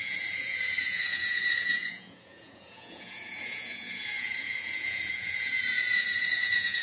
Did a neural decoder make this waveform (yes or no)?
yes